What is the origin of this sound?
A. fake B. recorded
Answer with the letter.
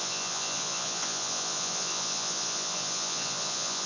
A